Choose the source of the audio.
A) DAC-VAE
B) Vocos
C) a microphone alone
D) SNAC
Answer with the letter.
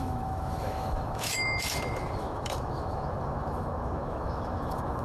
A